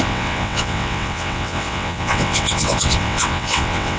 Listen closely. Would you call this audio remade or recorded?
remade